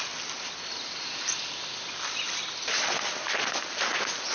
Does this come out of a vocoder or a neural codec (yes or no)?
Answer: no